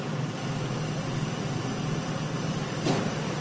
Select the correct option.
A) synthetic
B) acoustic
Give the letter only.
B